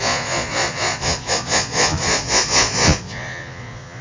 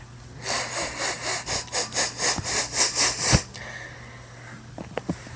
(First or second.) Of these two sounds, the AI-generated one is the first